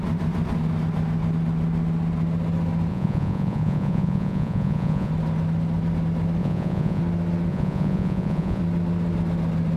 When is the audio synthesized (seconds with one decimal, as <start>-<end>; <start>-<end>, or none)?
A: 2.9-5.1; 6.4-7.0; 7.5-8.6